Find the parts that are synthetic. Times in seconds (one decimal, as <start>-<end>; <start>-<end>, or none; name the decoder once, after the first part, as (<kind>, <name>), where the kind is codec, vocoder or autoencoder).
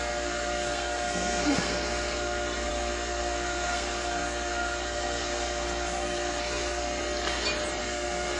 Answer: 0.0-7.0 (codec, SNAC); 7.8-8.4